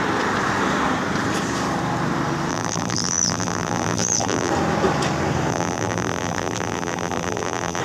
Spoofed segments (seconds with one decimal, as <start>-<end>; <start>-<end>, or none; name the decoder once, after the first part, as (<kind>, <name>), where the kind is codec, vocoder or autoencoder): 2.5-4.5 (vocoder, BigVGAN v2); 5.5-7.8

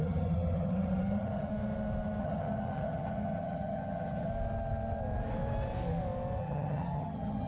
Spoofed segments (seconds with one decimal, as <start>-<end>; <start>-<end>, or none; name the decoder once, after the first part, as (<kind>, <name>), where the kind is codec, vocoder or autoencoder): 0.0-1.5 (vocoder, HiFi-GAN); 2.2-4.3; 6.4-7.5

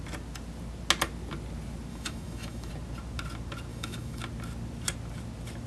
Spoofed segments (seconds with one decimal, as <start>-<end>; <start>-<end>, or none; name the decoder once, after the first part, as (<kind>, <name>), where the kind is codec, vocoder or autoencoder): 1.9-2.7 (autoencoder, DAC-VAE); 3.7-4.2

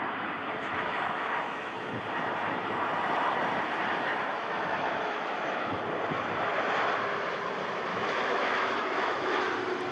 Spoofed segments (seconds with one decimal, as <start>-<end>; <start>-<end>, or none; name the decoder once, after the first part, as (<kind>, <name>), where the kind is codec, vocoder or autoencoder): 0.6-1.9 (autoencoder, DAC-VAE); 4.3-5.8; 7.9-9.4

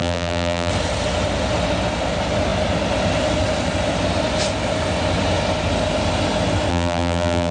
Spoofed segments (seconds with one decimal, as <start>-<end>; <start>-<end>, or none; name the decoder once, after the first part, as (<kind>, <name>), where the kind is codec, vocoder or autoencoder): 0.0-0.7 (vocoder, BigVGAN v2); 6.7-7.5

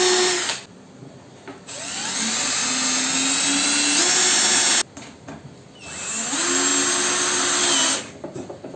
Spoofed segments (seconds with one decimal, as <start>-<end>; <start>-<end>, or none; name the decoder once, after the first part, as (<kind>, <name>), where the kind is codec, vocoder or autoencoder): none

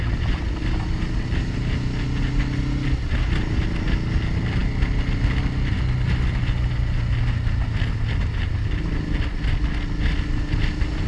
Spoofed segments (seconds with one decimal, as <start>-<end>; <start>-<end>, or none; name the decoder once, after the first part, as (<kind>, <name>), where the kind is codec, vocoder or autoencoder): none

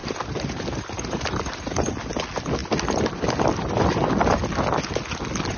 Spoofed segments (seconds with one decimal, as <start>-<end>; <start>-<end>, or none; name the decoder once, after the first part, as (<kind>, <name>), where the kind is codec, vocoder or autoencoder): 0.0-1.9 (vocoder, BigVGAN v2)